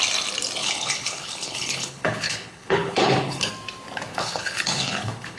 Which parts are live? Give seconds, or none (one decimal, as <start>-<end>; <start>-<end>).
0.0-0.6; 3.5-4.1